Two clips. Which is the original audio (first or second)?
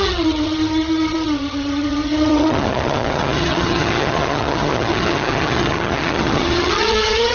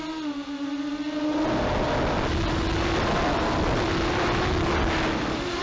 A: second